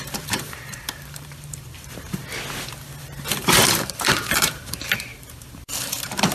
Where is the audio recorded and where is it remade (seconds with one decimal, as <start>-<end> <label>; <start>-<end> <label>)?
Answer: 0.0-2.2 remade; 2.2-3.0 recorded; 3.0-6.3 remade